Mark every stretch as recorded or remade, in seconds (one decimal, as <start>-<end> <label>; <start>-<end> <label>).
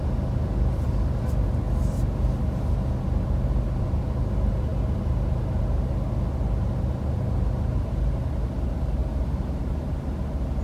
0.0-9.0 recorded; 9.0-10.2 remade; 10.2-10.6 recorded